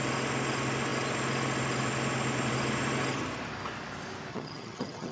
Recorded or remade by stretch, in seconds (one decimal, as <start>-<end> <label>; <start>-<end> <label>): 0.0-4.3 recorded; 4.3-5.1 remade